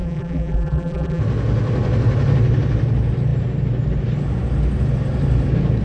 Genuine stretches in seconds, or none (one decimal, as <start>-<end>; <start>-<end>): 1.2-5.8